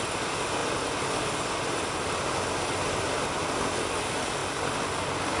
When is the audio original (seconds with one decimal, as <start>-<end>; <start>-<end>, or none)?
0.0-5.4

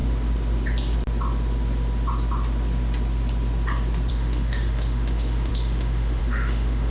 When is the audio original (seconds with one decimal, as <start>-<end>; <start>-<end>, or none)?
0.0-4.1

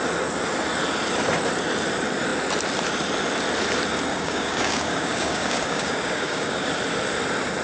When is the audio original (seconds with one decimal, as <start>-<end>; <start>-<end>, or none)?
0.0-4.1; 6.7-7.6

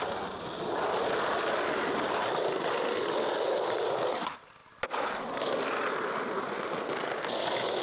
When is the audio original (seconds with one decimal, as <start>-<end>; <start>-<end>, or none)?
0.0-7.8

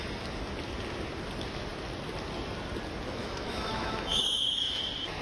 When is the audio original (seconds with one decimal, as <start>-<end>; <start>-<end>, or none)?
0.0-3.2; 4.8-5.2

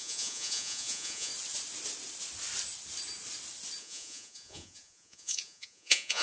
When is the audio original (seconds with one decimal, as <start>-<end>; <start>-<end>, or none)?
1.3-3.8